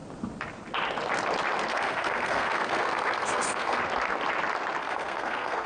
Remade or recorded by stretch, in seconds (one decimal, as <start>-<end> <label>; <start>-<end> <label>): 0.0-1.7 recorded; 1.7-3.8 remade; 3.8-4.8 recorded; 4.8-5.7 remade